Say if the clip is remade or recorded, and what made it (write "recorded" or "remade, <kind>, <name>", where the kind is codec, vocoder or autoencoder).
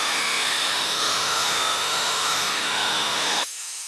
remade, autoencoder, DAC-VAE